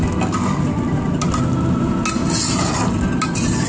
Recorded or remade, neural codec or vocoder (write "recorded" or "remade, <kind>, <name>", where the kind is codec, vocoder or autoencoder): recorded